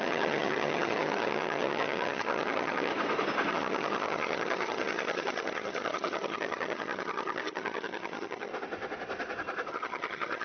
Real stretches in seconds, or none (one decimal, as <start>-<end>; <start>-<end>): 2.9-3.5; 8.5-9.7